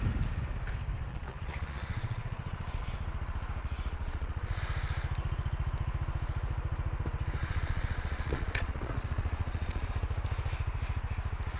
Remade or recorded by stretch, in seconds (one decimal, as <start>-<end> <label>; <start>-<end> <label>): 0.0-1.1 recorded; 1.1-2.9 remade; 2.9-3.6 recorded; 3.6-4.6 remade; 4.6-7.4 recorded; 7.4-9.9 remade; 9.9-11.6 recorded